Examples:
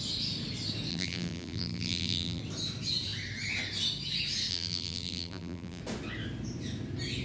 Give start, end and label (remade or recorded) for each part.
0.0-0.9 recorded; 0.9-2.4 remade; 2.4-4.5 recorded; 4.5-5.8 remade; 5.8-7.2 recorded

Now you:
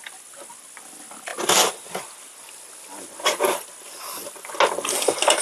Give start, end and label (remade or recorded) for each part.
0.0-5.4 recorded

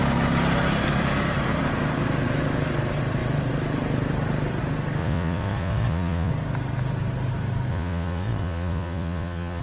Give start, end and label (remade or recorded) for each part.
0.0-5.0 recorded; 5.0-6.3 remade; 6.3-7.7 recorded; 7.7-9.6 remade

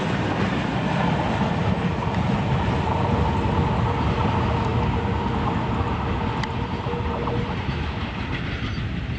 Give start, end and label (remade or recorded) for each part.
0.0-9.2 recorded

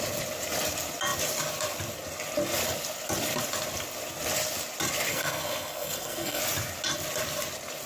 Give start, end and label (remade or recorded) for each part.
0.0-5.1 recorded; 5.1-6.4 remade; 6.4-7.9 recorded

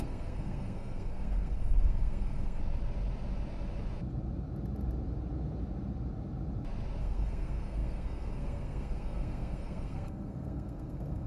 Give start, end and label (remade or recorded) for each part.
0.0-2.6 remade; 2.6-7.0 recorded; 7.0-11.3 remade